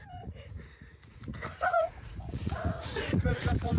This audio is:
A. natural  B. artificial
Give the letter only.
B